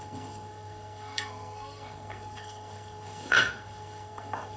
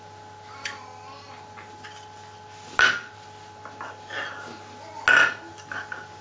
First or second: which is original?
second